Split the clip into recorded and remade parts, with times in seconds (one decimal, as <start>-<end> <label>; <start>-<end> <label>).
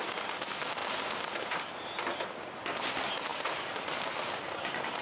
0.0-5.0 recorded